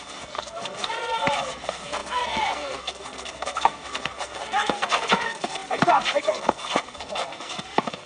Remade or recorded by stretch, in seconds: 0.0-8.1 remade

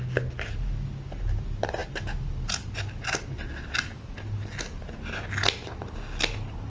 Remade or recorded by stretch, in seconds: 0.0-6.7 recorded

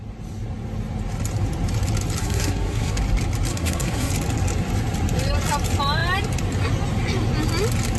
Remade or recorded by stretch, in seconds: 0.0-2.2 recorded; 2.2-3.0 remade; 3.0-3.5 recorded; 3.5-4.1 remade; 4.1-8.0 recorded

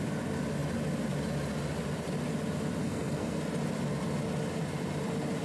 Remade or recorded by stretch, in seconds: 0.0-2.8 recorded; 2.8-3.4 remade; 3.4-5.4 recorded